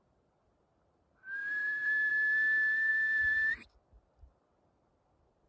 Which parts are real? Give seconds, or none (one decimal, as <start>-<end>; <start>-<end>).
0.0-1.4; 2.1-2.9; 3.5-5.5